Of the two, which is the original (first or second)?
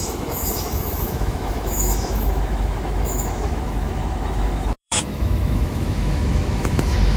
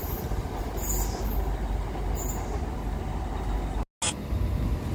second